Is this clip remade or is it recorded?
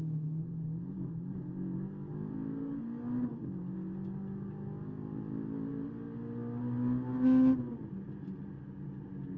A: recorded